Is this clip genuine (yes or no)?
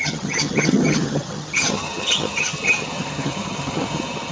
no